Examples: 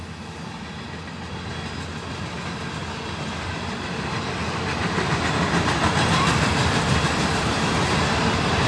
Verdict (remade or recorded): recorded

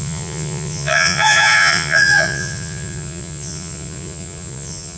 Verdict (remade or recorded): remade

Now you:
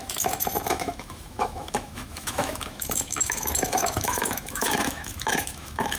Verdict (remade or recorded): remade